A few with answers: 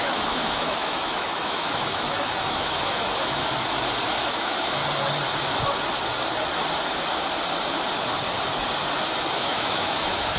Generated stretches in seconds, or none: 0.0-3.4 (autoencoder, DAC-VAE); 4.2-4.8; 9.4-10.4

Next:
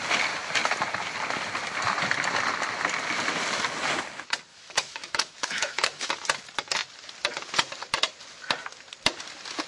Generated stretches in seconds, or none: 4.5-6.0 (autoencoder, DAC-VAE)

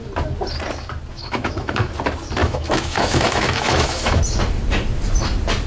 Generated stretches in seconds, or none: 1.1-1.9 (autoencoder, DAC-VAE); 2.4-4.2